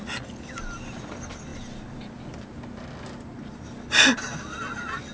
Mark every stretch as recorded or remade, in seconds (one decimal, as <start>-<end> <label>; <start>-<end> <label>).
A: 0.0-5.1 recorded